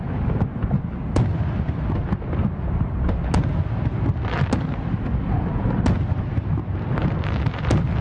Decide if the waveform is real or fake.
real